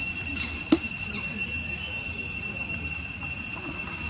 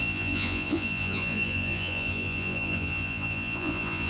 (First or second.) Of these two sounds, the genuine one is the first